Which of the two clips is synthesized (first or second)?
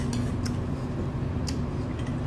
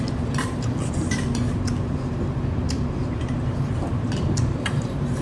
second